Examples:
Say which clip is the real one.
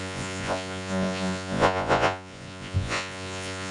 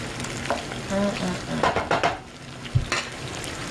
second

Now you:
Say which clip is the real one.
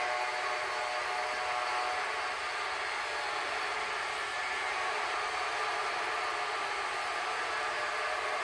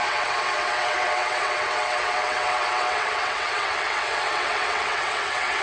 first